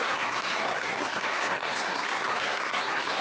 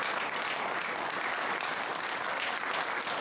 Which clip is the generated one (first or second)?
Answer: first